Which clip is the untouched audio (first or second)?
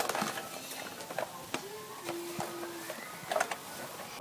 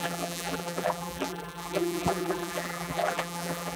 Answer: first